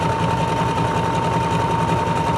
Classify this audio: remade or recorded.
recorded